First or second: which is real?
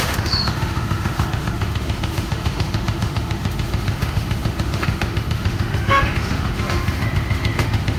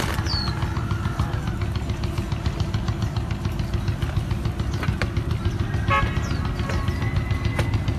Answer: second